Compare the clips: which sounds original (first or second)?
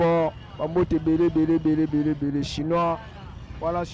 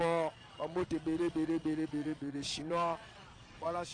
first